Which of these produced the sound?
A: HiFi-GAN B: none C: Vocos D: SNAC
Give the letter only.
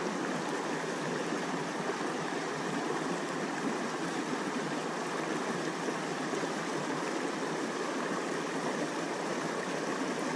B